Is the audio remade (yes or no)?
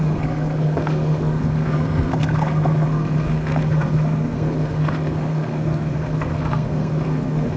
yes